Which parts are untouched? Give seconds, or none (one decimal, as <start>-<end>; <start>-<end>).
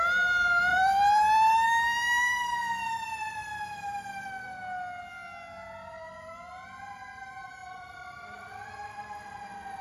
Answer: 0.0-0.7; 4.3-7.6; 8.7-9.8